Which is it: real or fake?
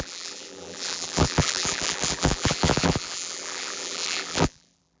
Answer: fake